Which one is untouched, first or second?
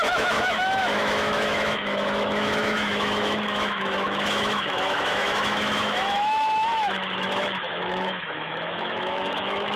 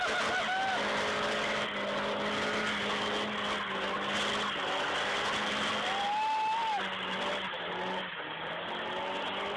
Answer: second